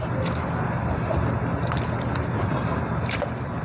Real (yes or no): yes